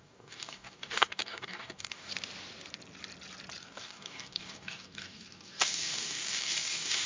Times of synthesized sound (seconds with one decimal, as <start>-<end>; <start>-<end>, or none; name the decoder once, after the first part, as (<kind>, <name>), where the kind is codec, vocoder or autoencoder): 0.0-2.1 (codec, DAC); 3.6-7.1